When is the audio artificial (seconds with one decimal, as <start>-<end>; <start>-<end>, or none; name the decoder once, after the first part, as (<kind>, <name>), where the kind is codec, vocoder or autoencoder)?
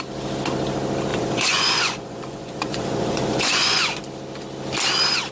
1.1-4.0 (vocoder, Vocos)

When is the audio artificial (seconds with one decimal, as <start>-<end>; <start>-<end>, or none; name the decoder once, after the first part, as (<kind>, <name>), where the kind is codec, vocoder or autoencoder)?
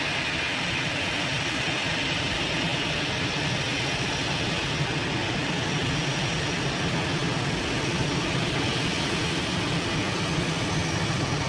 none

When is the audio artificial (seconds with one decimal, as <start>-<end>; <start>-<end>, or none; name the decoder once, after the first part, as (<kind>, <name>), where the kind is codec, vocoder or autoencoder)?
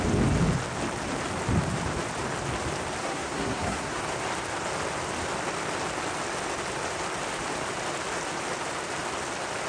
3.0-4.0 (codec, SNAC)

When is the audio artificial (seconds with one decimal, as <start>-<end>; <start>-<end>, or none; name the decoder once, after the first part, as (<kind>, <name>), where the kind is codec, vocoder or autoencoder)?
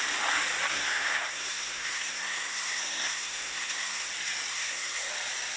0.7-4.1 (codec, SNAC); 4.5-5.1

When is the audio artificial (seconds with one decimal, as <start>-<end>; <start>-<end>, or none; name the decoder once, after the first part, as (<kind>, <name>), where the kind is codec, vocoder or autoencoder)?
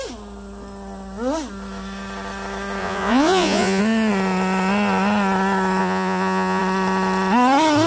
2.8-3.8 (vocoder, Vocos); 5.8-6.6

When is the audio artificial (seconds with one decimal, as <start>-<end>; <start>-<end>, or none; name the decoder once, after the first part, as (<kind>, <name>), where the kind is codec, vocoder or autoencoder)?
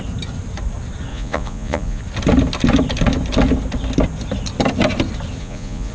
1.1-2.0 (vocoder, Vocos); 5.4-5.9